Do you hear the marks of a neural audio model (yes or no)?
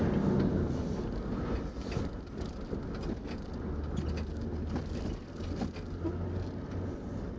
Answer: no